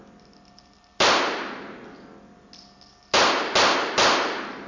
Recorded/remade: recorded